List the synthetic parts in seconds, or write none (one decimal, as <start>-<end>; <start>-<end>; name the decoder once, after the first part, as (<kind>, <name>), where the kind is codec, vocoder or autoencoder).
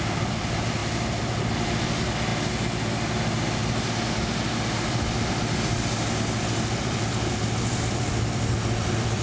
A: 0.0-2.3 (vocoder, BigVGAN v2); 3.1-3.6; 6.8-9.2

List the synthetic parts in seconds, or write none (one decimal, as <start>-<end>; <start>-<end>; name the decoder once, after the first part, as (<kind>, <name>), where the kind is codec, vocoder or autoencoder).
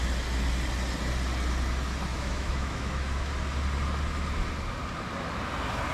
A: 2.1-3.3 (autoencoder, DAC-VAE)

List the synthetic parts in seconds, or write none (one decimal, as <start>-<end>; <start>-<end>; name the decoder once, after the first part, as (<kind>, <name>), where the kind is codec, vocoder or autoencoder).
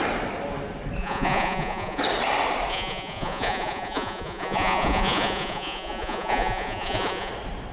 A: 1.0-2.0 (vocoder, Vocos); 2.7-7.3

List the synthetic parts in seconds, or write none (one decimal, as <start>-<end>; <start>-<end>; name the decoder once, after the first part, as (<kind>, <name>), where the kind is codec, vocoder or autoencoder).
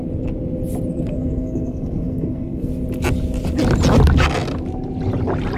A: 0.9-2.7 (codec, SNAC)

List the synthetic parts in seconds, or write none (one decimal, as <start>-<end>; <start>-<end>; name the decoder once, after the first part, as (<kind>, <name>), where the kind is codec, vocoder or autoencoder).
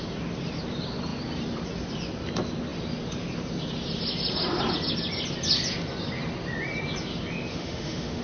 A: 7.5-8.2 (autoencoder, DAC-VAE)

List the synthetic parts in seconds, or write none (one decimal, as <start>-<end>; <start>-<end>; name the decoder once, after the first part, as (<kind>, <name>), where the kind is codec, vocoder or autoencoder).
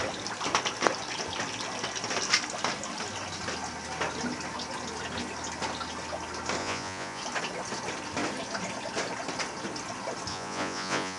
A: 6.6-7.2 (vocoder, Vocos); 10.3-11.2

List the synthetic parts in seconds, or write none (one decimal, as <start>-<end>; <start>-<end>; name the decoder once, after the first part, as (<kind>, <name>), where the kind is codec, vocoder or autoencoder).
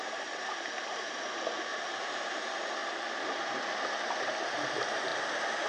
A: 1.7-2.4 (vocoder, BigVGAN v2)